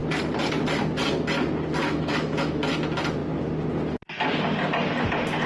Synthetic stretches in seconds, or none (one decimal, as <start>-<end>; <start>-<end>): 1.8-2.7